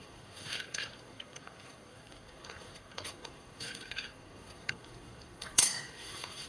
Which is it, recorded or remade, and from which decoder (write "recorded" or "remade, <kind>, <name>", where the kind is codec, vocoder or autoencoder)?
remade, codec, SNAC